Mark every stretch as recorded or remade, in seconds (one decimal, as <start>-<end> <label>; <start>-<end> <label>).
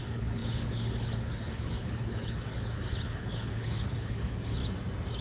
0.0-4.6 remade; 4.6-5.2 recorded